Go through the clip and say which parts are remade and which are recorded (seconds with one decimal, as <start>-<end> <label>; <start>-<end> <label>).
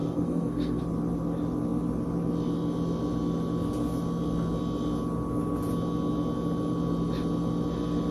0.0-0.8 remade; 0.8-8.1 recorded